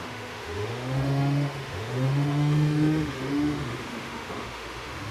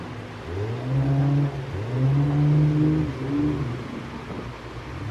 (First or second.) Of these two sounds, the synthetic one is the first